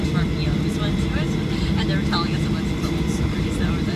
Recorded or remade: recorded